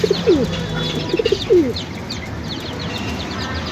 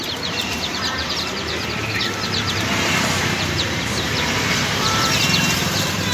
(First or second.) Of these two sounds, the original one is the first